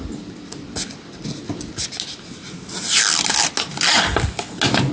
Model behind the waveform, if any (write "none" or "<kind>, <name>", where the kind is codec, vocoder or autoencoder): none